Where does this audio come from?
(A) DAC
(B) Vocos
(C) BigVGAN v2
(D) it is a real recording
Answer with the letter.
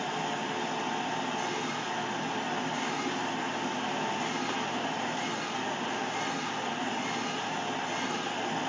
D